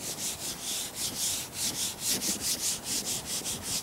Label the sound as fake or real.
real